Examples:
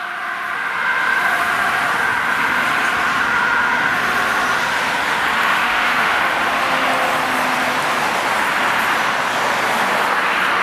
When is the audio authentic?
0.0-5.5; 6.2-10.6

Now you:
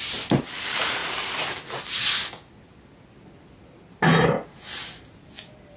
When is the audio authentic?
0.0-5.8

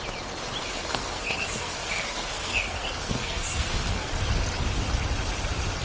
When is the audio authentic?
0.0-0.6; 4.1-5.8

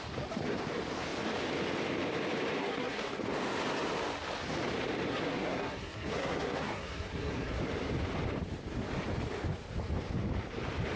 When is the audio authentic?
0.0-2.6; 3.1-5.1; 7.6-11.0